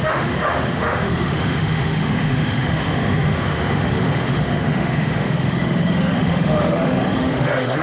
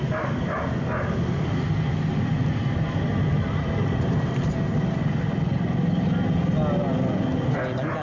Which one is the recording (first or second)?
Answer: second